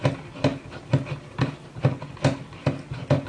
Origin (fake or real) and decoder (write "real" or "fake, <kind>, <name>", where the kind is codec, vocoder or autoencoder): real